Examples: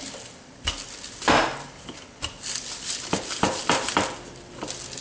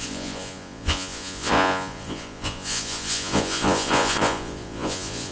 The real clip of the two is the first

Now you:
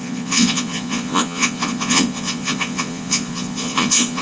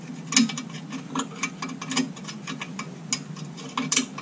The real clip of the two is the second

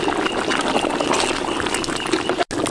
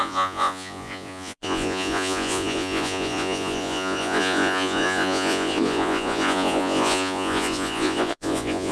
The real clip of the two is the first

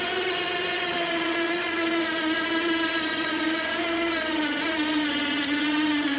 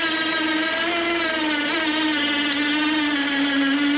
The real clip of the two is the second